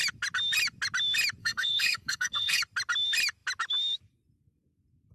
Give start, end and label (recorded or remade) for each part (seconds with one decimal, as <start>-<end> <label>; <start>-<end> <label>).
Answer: 0.0-1.4 recorded; 1.4-2.6 remade; 2.6-5.1 recorded